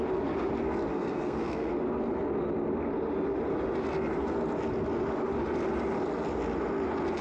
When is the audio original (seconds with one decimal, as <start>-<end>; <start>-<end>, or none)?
0.0-0.9; 1.7-7.2